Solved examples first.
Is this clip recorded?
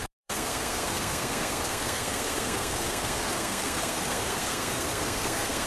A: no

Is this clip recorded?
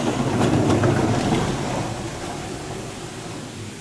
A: yes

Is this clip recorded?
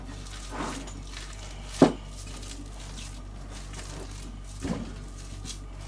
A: yes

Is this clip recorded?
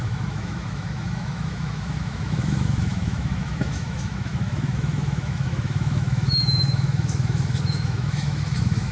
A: no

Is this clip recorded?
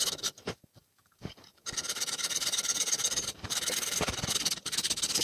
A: no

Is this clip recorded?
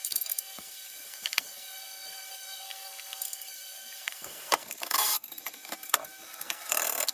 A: no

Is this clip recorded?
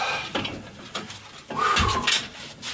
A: yes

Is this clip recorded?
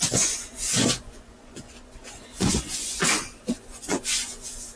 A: no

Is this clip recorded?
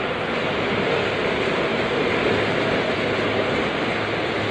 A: yes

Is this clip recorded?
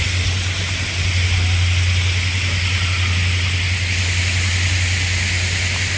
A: yes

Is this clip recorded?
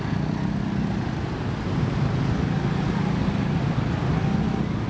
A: yes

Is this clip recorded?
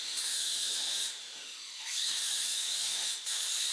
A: no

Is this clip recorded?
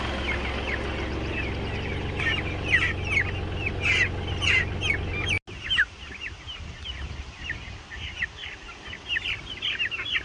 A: yes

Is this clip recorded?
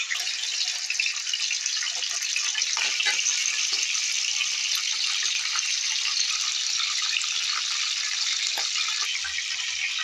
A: yes